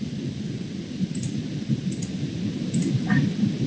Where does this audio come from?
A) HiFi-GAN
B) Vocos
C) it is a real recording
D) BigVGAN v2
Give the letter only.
D